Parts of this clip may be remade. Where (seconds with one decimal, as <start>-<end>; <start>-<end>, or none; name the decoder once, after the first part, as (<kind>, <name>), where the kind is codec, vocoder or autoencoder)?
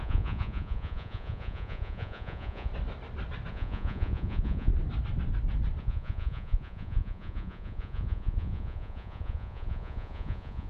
0.0-2.7 (vocoder, Vocos); 3.5-4.7; 5.8-10.7